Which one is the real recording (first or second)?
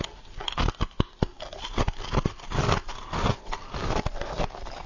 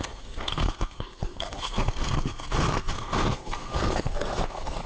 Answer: first